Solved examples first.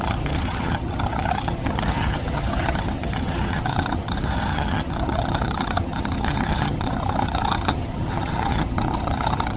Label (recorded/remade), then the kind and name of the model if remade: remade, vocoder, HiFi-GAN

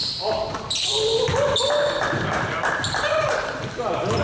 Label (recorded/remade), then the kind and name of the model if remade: recorded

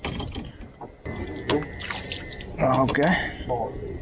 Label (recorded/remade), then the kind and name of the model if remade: recorded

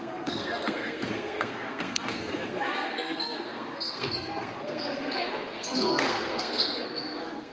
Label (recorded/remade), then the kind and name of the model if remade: remade, codec, SNAC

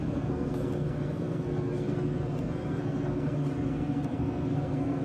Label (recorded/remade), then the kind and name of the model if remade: remade, codec, SNAC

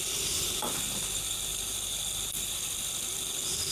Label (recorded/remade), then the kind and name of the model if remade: recorded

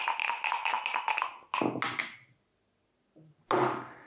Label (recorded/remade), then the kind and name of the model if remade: recorded